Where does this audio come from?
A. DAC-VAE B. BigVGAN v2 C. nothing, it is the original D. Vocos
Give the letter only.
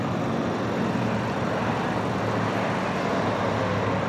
C